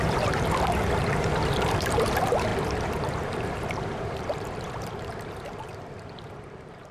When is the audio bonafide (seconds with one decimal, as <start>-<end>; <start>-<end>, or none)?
none